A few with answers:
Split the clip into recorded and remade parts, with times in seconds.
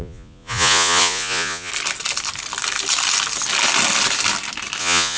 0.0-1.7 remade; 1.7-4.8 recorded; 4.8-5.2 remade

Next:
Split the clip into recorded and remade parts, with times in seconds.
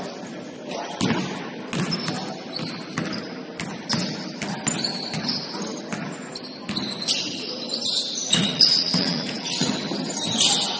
0.0-8.2 recorded; 8.2-9.7 remade; 9.7-10.8 recorded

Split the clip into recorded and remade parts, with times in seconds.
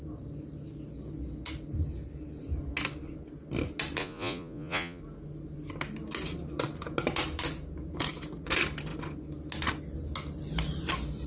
0.0-4.0 recorded; 4.0-5.0 remade; 5.0-11.3 recorded